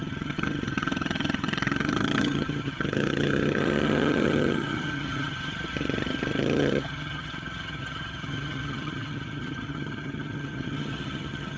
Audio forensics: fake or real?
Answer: fake